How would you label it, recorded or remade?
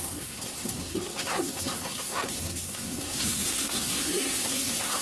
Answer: remade